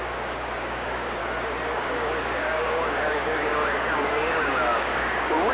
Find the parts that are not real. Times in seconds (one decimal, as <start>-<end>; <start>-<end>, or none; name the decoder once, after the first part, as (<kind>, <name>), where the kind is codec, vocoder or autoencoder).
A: 0.0-1.2 (codec, DAC); 1.7-5.5